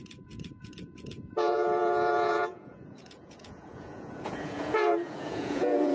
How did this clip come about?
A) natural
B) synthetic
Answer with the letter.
B